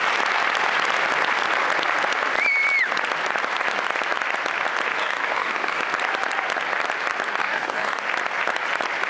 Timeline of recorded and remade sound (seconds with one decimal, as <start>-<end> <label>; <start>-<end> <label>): 0.0-5.0 recorded; 5.0-5.8 remade; 5.8-7.4 recorded; 7.4-8.0 remade; 8.0-9.1 recorded